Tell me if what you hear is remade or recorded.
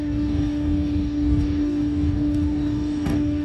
remade